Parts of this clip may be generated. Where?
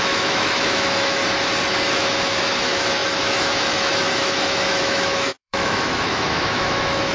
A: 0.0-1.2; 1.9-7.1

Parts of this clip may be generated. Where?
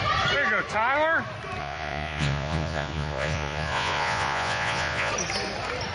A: 1.6-5.1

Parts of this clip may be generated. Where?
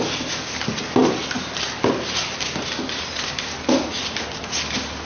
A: none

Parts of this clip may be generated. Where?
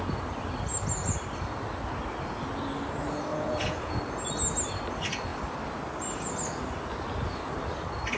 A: 3.3-4.0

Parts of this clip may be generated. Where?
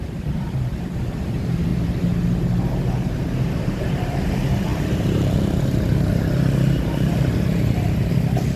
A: 0.0-1.7; 3.1-8.6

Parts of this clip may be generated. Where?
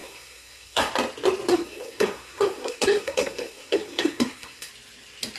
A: 0.0-0.9; 1.5-4.7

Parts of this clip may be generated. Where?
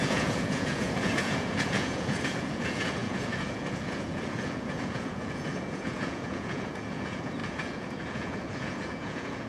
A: 0.0-9.5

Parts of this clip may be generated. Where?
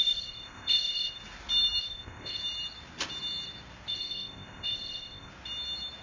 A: 0.0-1.2; 1.8-2.4; 3.9-5.3